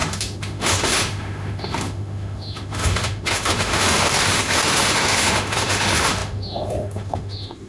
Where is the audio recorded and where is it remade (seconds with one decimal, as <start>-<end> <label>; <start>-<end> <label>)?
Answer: 0.0-7.7 remade